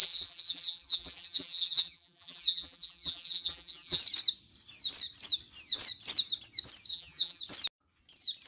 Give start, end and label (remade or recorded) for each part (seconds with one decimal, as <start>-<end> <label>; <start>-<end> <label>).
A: 0.0-4.0 remade; 4.0-6.9 recorded; 6.9-7.4 remade; 7.4-8.5 recorded